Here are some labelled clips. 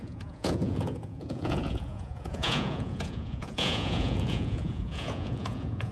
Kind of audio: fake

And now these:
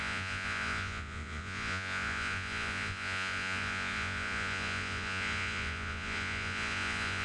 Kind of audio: fake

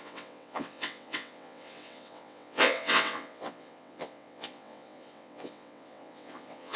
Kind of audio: fake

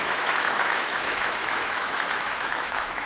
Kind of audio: fake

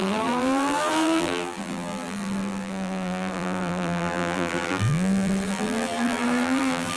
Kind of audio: fake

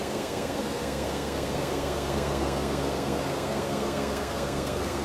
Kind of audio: fake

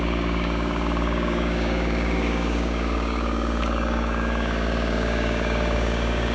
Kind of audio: fake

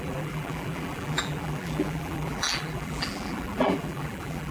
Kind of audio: fake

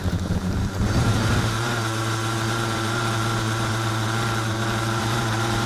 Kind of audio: fake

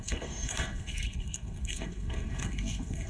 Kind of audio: fake